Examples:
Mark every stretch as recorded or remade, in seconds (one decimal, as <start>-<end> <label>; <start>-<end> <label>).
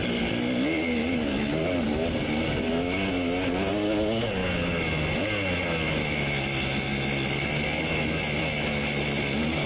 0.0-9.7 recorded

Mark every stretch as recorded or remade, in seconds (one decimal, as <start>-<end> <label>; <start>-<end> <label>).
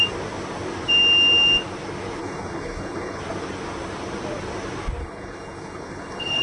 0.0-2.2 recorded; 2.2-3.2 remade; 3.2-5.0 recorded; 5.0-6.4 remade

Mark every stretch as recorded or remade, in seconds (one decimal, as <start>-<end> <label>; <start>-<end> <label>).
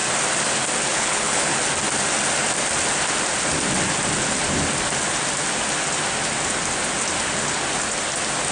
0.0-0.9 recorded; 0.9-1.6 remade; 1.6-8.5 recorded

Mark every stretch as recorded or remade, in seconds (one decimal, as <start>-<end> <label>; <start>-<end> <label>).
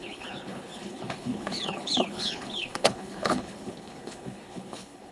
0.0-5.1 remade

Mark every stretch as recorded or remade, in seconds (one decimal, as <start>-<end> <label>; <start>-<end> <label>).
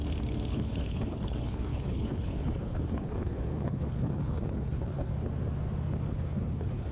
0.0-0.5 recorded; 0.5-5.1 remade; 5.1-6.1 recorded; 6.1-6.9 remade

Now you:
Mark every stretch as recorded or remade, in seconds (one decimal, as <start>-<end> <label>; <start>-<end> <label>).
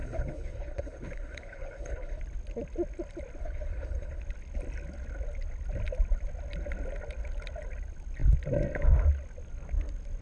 0.0-2.2 remade; 2.2-3.4 recorded; 3.4-4.2 remade; 4.2-10.2 recorded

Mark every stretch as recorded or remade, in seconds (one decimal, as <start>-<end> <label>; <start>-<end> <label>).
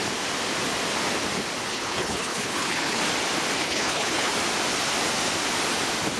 0.0-1.7 recorded; 1.7-3.0 remade; 3.0-3.6 recorded; 3.6-4.3 remade; 4.3-6.2 recorded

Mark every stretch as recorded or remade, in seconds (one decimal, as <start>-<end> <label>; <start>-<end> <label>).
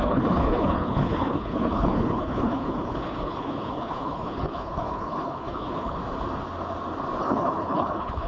0.0-6.0 remade; 6.0-7.2 recorded; 7.2-8.3 remade